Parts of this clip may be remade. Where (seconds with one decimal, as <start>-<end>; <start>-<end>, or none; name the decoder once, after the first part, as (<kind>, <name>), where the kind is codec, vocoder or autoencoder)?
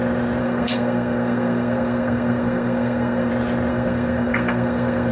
0.4-3.3 (codec, SNAC); 3.7-5.1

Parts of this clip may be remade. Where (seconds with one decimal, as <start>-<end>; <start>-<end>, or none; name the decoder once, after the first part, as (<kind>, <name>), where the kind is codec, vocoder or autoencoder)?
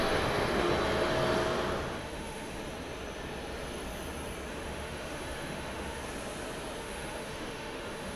0.0-0.7 (autoencoder, DAC-VAE); 1.9-2.6; 4.5-6.0; 6.8-8.2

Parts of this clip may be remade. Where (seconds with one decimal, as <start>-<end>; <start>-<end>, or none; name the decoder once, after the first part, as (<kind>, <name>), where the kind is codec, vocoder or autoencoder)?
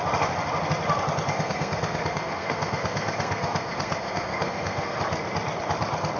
1.3-5.0 (codec, SNAC)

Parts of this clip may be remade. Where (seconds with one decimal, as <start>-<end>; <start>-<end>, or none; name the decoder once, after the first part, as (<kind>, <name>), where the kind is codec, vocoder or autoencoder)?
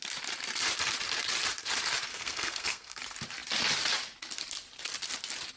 2.1-3.0 (codec, SNAC)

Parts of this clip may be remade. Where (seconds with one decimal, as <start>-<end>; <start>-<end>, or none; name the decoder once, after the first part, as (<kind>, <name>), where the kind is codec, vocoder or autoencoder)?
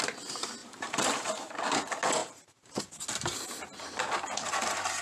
0.6-1.6 (vocoder, BigVGAN v2); 2.2-2.8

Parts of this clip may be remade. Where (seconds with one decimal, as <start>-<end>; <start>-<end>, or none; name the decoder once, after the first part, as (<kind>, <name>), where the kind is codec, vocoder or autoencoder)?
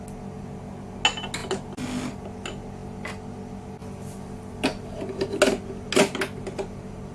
none